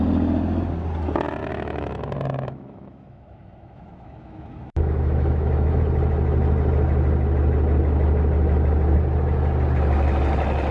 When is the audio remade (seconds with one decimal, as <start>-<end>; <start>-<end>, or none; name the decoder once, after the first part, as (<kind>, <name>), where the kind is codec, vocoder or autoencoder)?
1.4-5.8 (autoencoder, DAC-VAE)